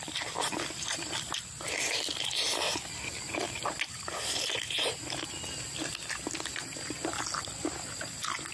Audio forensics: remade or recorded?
recorded